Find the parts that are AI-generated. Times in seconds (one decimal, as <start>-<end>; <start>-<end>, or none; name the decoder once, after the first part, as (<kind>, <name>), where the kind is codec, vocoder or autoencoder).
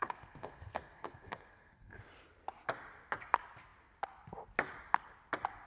0.0-2.0 (codec, SNAC)